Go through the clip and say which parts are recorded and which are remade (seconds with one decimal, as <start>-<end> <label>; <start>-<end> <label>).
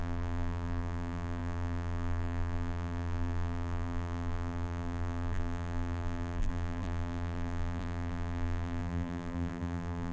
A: 0.0-10.1 remade